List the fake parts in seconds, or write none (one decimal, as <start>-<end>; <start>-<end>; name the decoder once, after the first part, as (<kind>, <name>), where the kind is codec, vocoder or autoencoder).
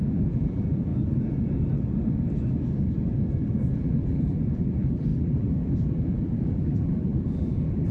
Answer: 0.0-0.9 (vocoder, BigVGAN v2); 3.7-7.9